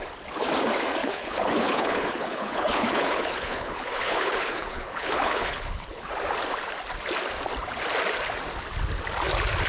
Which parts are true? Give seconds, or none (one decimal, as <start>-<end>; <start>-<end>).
0.0-1.0; 6.1-9.7